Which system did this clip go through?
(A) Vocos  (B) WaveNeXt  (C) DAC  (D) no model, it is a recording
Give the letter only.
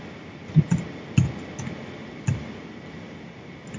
D